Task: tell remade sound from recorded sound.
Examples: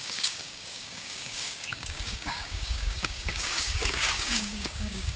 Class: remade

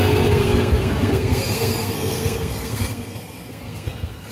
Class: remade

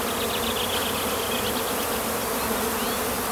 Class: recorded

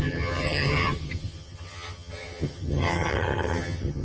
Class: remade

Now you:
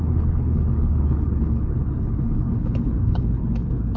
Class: remade